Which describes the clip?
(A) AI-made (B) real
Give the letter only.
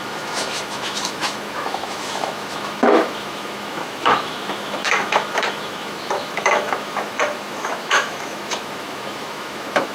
A